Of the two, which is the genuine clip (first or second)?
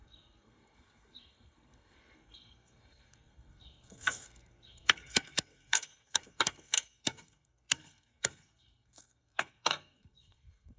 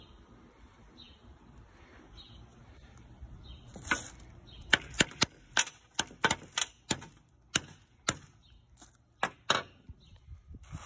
second